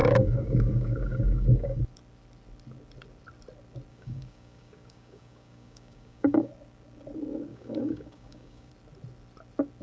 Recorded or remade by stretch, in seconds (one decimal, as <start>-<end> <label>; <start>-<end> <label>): 0.0-1.8 remade; 1.8-3.9 recorded; 3.9-6.5 remade; 6.5-7.5 recorded; 7.5-8.7 remade; 8.7-9.8 recorded